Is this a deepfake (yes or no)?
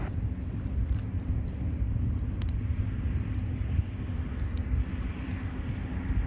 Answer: no